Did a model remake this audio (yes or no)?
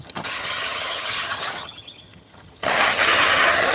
yes